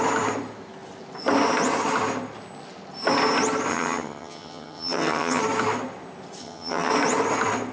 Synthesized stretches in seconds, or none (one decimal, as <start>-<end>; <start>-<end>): 3.7-5.4; 6.4-6.9